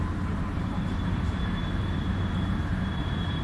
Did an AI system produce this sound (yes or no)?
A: yes